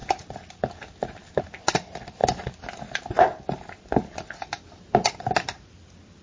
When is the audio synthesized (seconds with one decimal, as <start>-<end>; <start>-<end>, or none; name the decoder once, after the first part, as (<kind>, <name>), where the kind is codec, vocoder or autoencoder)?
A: none